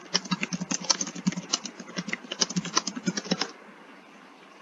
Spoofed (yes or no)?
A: no